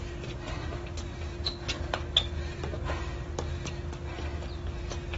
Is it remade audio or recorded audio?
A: recorded